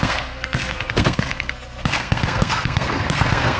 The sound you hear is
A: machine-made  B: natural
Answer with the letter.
A